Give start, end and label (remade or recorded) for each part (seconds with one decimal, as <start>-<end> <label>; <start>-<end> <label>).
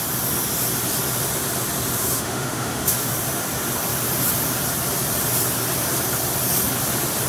0.0-2.0 recorded; 2.0-3.1 remade; 3.1-7.3 recorded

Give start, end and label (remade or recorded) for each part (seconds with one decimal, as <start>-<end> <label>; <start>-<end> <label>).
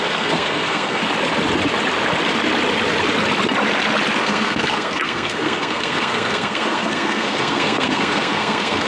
0.0-1.0 remade; 1.0-4.2 recorded; 4.2-8.9 remade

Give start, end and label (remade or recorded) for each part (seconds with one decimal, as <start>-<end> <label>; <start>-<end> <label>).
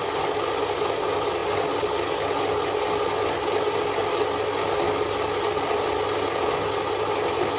0.0-7.6 recorded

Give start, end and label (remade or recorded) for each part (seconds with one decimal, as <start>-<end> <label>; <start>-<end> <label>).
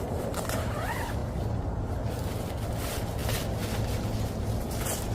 0.0-5.1 recorded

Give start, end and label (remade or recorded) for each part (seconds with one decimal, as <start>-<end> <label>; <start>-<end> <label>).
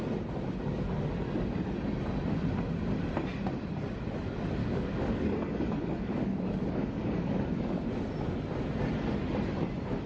0.0-4.6 recorded; 4.6-7.9 remade; 7.9-10.1 recorded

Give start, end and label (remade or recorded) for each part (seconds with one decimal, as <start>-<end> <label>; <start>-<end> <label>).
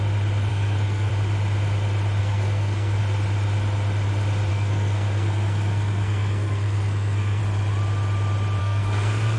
0.0-0.5 recorded; 0.5-1.1 remade; 1.1-2.2 recorded; 2.2-3.0 remade; 3.0-4.5 recorded; 4.5-7.4 remade; 7.4-8.6 recorded; 8.6-9.4 remade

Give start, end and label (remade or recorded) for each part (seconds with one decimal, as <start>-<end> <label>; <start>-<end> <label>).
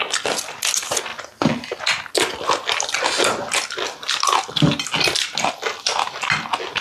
0.0-6.8 recorded